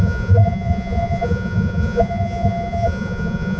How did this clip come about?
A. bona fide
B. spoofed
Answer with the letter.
B